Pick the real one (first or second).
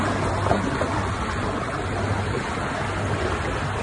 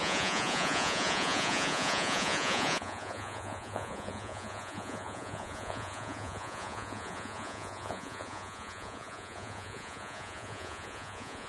first